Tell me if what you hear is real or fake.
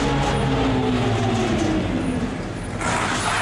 real